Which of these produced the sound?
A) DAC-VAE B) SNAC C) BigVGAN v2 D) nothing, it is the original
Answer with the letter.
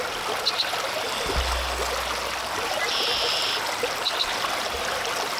D